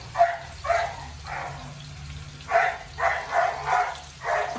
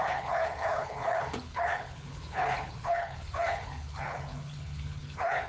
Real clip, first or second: first